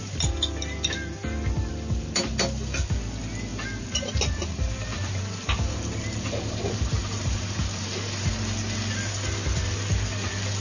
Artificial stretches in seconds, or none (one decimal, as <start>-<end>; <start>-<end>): 3.5-8.3